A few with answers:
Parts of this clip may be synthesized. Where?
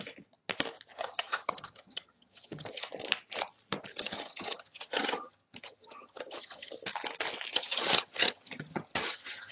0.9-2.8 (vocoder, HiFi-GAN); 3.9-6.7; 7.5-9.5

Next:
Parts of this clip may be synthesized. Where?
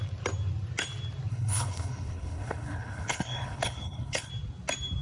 1.3-4.3 (codec, HILCodec)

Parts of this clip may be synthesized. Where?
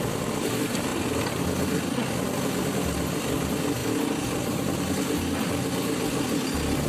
none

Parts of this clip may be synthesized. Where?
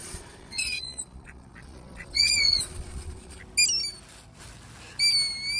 0.0-3.4 (vocoder, Vocos)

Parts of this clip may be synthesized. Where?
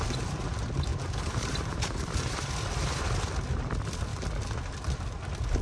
0.9-2.5 (vocoder, BigVGAN v2)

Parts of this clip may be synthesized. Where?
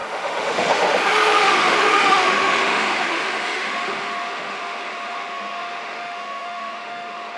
0.0-7.4 (autoencoder, DAC-VAE)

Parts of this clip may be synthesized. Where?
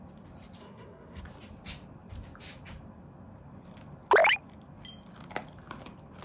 0.6-1.2 (codec, SNAC)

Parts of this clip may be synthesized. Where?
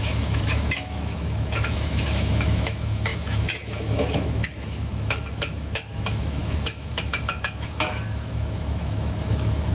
0.0-9.7 (autoencoder, DAC-VAE)